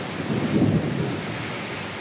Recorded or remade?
recorded